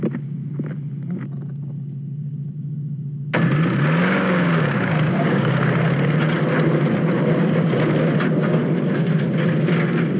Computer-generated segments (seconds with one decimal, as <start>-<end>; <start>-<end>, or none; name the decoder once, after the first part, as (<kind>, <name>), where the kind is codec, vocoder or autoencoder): 4.0-5.5 (codec, DAC)